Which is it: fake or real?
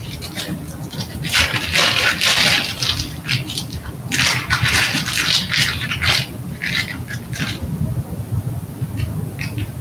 fake